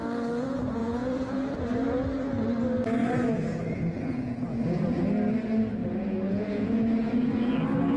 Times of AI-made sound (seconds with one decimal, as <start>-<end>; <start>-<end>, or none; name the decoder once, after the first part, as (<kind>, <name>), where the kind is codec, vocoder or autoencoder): 0.8-1.5 (vocoder, Vocos); 3.0-5.0; 5.8-7.5